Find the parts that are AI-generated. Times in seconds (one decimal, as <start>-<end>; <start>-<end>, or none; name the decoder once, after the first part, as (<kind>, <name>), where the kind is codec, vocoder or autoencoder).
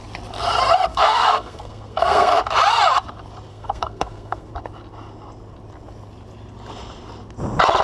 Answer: 0.9-2.3 (codec, SNAC); 3.5-4.5